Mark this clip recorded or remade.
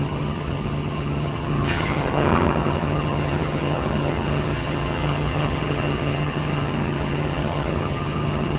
remade